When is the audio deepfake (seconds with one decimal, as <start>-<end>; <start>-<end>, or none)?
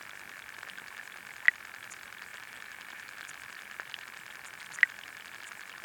2.3-3.2